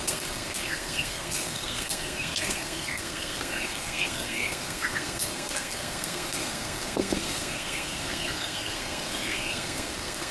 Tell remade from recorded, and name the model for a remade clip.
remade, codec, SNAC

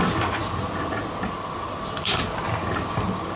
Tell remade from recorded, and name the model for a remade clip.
recorded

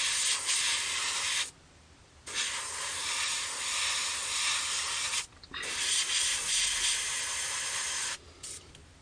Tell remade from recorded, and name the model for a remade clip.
recorded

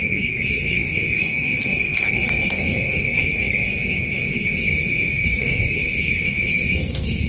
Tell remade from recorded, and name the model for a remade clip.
remade, codec, SNAC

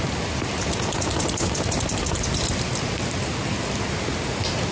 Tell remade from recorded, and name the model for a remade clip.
recorded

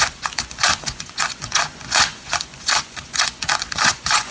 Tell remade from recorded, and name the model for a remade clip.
remade, vocoder, Vocos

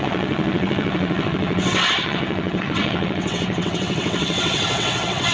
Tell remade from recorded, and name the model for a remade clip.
remade, vocoder, WaveNeXt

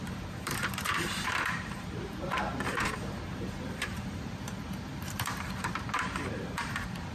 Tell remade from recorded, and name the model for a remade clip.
remade, vocoder, BigVGAN v2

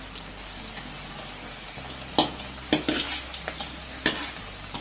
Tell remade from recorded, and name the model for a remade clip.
recorded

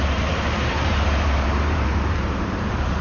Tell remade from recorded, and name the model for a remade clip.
remade, vocoder, BigVGAN v2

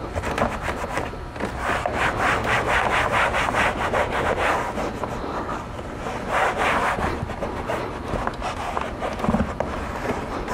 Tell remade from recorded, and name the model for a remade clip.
recorded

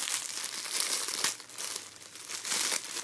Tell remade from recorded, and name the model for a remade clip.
recorded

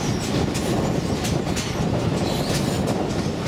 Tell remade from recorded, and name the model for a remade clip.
recorded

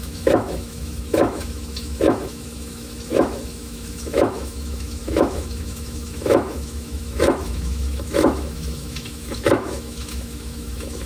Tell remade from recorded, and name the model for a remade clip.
remade, autoencoder, DAC-VAE